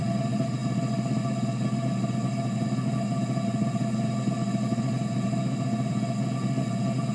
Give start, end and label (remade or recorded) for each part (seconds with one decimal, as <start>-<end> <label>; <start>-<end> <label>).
0.0-7.1 recorded